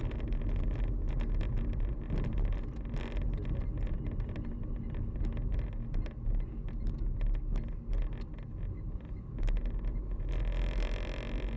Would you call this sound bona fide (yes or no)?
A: yes